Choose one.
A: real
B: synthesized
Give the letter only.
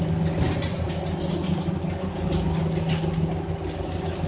A